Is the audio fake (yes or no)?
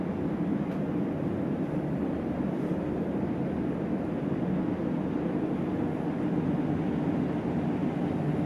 no